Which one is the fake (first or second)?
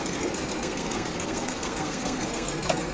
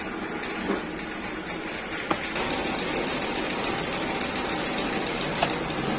first